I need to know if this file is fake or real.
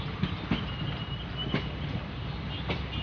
real